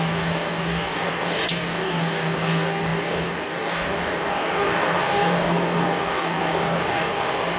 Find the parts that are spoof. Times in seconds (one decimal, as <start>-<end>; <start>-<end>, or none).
0.0-7.6